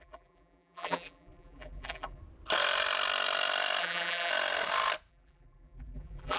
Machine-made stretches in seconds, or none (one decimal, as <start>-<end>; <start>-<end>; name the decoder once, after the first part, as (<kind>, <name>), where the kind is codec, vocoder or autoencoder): 0.0-2.2 (vocoder, BigVGAN v2); 3.8-4.3; 5.1-6.4